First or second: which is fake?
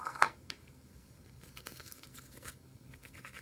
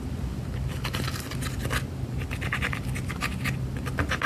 first